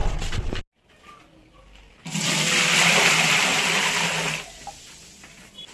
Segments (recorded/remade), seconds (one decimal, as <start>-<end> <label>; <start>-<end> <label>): 0.0-0.6 remade; 0.6-1.4 recorded; 1.4-3.8 remade; 3.8-5.7 recorded